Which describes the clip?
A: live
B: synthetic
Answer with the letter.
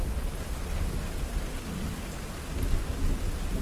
A